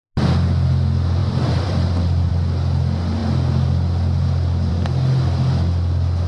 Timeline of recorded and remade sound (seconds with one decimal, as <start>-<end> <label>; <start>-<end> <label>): 0.0-1.2 recorded; 1.2-2.3 remade; 2.3-6.3 recorded